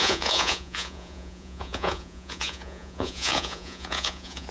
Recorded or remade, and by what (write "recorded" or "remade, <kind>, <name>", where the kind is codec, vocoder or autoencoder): remade, vocoder, Vocos